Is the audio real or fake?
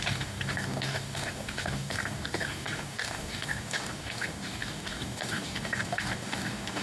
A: fake